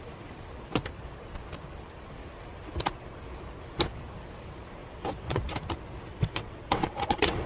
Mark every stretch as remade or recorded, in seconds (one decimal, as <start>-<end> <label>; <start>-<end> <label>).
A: 0.0-4.8 recorded; 4.8-5.4 remade; 5.4-6.1 recorded; 6.1-7.5 remade